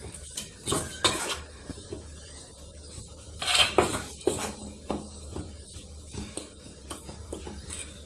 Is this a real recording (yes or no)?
no